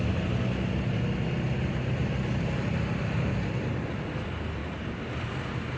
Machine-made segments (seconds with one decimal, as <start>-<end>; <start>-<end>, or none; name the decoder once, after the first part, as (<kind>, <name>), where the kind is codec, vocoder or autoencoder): 4.6-5.8 (vocoder, BigVGAN v2)